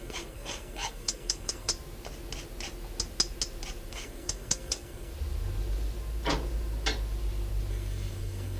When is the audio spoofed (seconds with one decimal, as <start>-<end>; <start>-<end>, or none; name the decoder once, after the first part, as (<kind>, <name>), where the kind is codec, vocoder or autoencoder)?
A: 0.0-1.7 (codec, SNAC); 3.9-5.1; 7.7-8.6